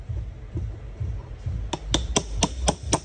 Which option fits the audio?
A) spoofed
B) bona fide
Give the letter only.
B